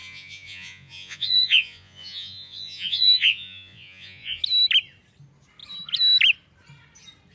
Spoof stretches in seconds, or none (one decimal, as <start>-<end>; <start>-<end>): 0.0-4.4